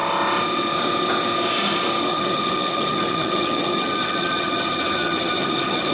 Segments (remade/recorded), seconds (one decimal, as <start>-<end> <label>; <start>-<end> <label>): 0.0-2.1 recorded; 2.1-5.9 remade